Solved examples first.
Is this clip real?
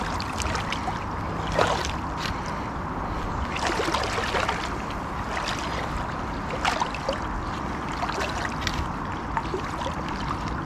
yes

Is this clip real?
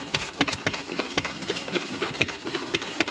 no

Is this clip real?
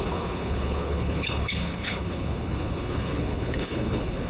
no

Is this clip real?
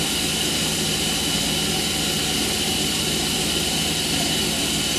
yes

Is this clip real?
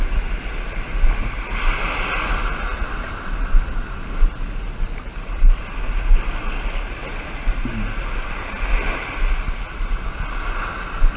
yes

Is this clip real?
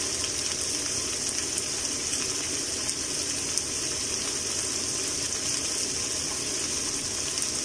yes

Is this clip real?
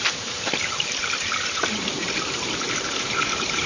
no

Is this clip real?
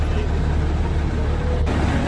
yes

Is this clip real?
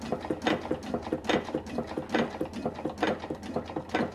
yes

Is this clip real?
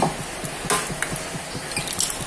yes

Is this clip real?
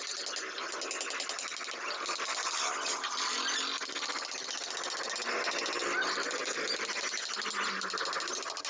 yes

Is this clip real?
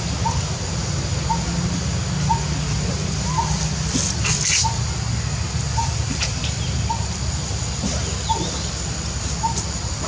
yes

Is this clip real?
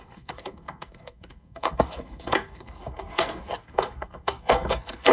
no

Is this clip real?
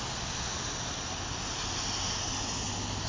yes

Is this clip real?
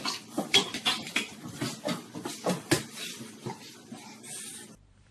no